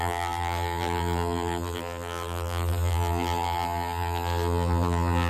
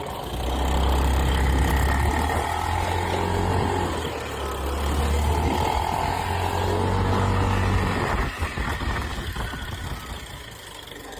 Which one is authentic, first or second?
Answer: second